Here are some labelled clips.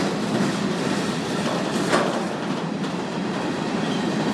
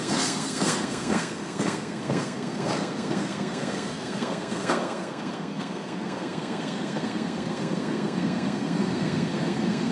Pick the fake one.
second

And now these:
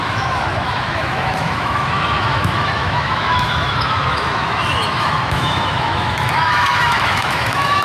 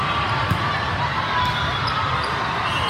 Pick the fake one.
first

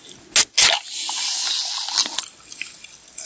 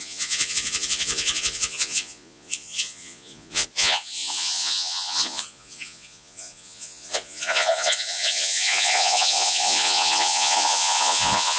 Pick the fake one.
second